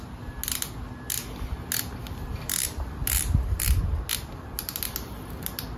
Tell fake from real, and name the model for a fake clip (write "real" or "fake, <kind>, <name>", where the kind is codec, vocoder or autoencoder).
real